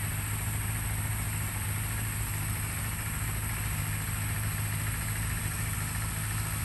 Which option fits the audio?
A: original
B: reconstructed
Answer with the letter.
A